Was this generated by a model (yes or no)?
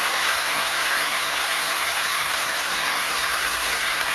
yes